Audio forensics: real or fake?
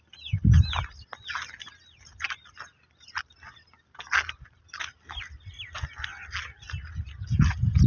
real